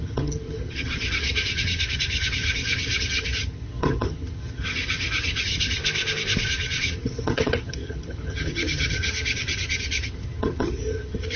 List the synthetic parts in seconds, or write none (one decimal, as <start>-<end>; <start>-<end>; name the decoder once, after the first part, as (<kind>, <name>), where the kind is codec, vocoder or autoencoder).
0.0-5.8 (vocoder, HiFi-GAN); 6.5-11.4